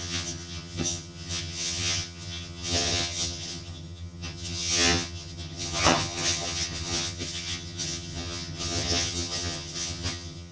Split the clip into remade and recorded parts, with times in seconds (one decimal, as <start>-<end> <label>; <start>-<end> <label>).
0.0-10.5 remade